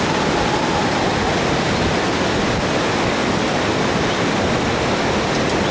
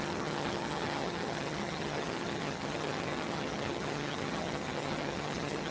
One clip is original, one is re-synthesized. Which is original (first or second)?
first